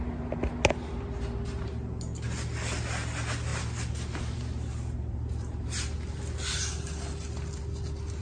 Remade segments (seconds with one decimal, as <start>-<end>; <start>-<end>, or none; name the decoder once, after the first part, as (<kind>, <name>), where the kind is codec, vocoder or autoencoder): 3.5-4.4 (vocoder, BigVGAN v2)